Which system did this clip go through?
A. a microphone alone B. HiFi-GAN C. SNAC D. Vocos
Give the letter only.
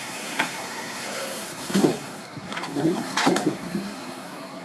C